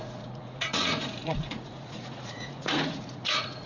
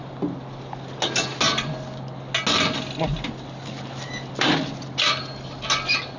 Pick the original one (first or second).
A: second